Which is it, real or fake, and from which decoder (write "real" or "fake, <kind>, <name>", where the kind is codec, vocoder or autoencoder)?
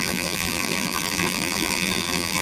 fake, vocoder, BigVGAN v2